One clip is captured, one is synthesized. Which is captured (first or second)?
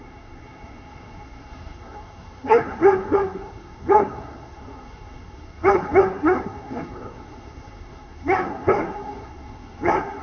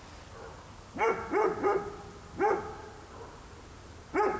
second